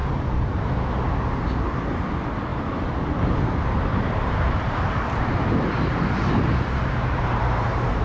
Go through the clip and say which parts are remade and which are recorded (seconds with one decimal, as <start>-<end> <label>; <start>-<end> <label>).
0.0-0.7 remade; 0.7-3.9 recorded; 3.9-8.0 remade